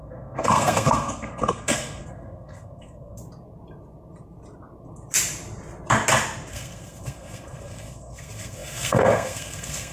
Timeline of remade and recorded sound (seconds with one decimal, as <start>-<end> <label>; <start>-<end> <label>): 0.0-3.2 remade; 3.2-6.5 recorded; 6.5-9.9 remade